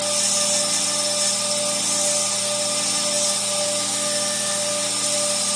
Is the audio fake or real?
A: real